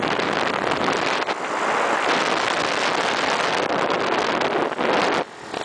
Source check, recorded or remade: recorded